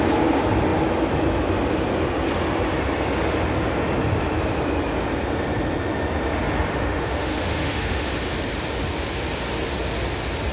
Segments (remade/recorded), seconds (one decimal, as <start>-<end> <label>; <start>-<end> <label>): 0.0-6.7 recorded; 6.7-8.1 remade; 8.1-10.5 recorded